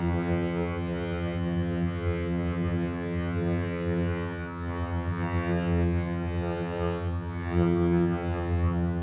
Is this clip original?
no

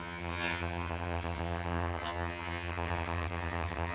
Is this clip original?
no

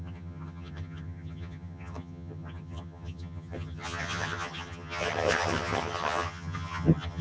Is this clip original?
no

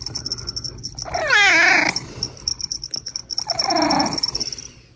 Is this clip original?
yes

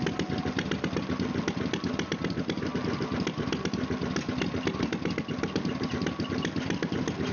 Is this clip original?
yes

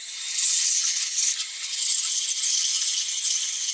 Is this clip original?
no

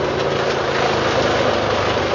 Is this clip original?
yes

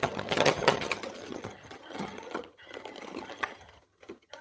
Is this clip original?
no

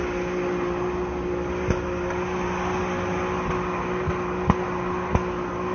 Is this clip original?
yes